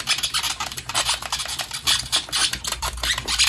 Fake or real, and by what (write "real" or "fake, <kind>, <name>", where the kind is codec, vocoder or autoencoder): fake, vocoder, BigVGAN v2